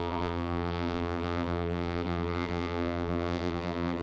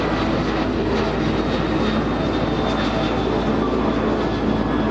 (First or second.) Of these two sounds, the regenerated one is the first